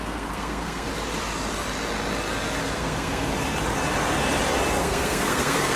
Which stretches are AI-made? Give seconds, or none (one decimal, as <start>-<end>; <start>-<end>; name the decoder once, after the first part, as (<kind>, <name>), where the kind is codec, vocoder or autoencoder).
0.0-0.9 (codec, SNAC); 2.6-3.3; 4.8-5.8